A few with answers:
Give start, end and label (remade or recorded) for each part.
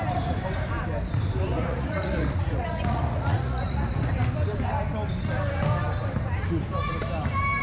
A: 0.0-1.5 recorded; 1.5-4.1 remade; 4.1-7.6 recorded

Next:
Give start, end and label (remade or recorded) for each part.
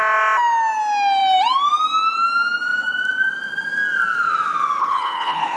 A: 0.0-4.8 recorded; 4.8-5.6 remade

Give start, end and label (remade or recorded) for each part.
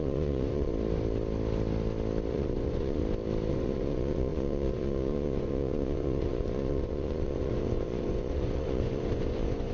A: 0.0-0.7 remade; 0.7-2.3 recorded; 2.3-3.0 remade; 3.0-3.5 recorded; 3.5-9.7 remade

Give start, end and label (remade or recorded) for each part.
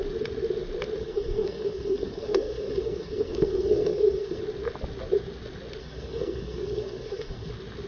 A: 0.0-1.0 recorded; 1.0-4.4 remade; 4.4-5.8 recorded; 5.8-7.5 remade; 7.5-7.9 recorded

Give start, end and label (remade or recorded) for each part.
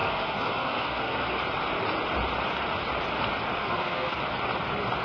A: 0.0-1.4 remade; 1.4-3.6 recorded; 3.6-4.2 remade; 4.2-5.0 recorded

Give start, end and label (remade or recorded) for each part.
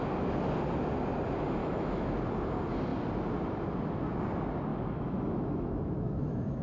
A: 0.0-1.6 recorded; 1.6-2.2 remade; 2.2-4.7 recorded; 4.7-6.6 remade